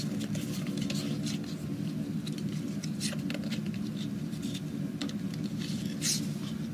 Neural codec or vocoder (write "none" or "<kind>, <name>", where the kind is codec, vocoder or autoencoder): vocoder, BigVGAN v2